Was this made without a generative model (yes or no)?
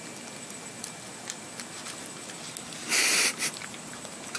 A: yes